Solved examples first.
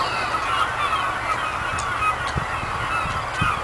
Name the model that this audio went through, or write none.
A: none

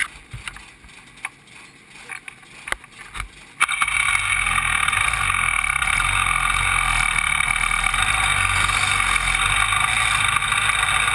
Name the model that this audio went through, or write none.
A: none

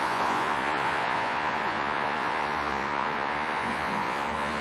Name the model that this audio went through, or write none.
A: vocoder, Vocos